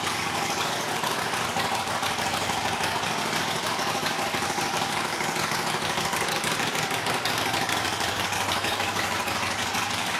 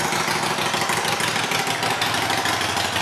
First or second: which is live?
second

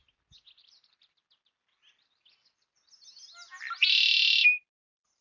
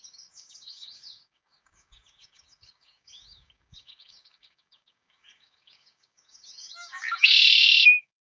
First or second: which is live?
first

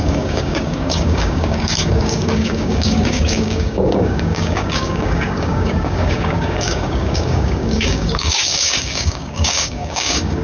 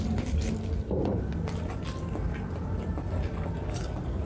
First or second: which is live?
second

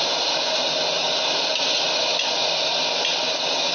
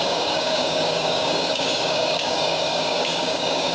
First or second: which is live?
first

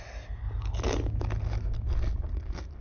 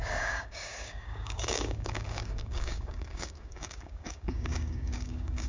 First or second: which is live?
first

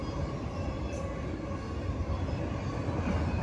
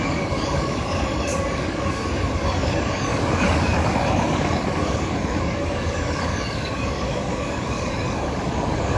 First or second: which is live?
first